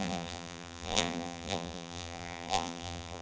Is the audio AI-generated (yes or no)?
yes